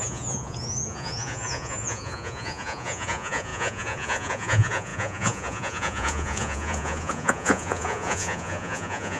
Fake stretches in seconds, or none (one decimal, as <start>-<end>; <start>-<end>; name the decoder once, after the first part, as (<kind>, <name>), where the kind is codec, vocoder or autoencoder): 0.0-9.2 (vocoder, Vocos)